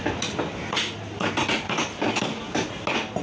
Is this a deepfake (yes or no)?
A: no